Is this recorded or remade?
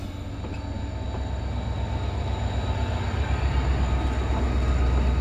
recorded